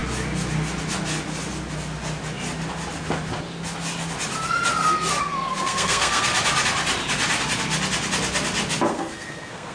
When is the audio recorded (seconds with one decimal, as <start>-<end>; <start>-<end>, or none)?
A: 0.0-5.2; 6.3-8.9